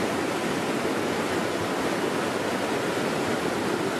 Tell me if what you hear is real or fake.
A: real